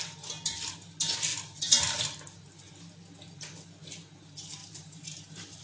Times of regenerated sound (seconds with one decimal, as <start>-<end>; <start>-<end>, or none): 4.6-5.6